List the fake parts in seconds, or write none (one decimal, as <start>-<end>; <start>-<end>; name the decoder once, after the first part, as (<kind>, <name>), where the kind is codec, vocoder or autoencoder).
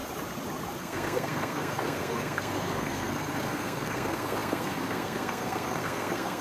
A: 0.8-6.4 (codec, SNAC)